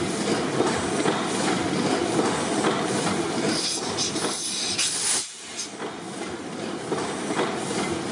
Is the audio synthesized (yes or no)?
no